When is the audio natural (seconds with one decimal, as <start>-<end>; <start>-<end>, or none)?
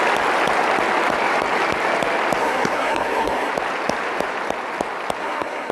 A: 0.0-2.4; 3.5-5.2